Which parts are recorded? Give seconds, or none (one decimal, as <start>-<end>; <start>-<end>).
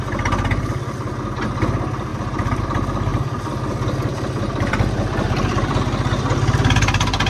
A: 0.0-2.1; 2.6-3.1; 5.8-7.3